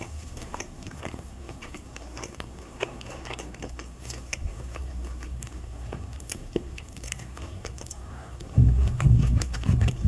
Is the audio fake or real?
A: fake